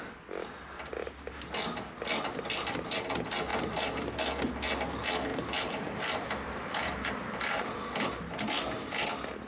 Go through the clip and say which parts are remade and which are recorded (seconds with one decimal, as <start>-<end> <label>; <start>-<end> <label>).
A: 0.0-3.5 recorded; 3.5-4.1 remade; 4.1-5.3 recorded; 5.3-7.6 remade; 7.6-9.5 recorded